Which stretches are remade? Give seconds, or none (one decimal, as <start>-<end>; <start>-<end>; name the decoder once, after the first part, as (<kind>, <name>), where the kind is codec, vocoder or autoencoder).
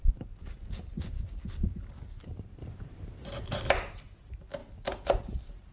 none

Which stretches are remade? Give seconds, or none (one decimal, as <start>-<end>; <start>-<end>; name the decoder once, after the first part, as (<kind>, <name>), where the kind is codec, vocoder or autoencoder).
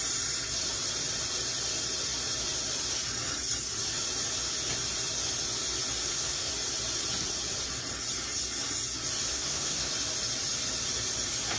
6.0-6.5 (codec, SNAC); 9.3-9.9